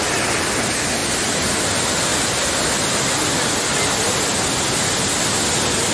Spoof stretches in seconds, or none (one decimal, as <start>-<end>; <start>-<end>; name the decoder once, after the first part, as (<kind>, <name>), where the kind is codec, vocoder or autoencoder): none